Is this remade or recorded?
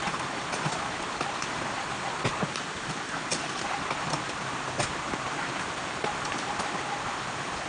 recorded